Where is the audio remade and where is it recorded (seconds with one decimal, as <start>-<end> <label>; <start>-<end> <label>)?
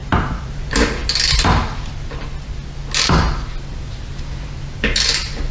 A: 0.0-1.0 remade; 1.0-3.7 recorded; 3.7-5.5 remade